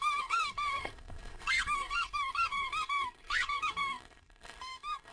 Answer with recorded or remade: remade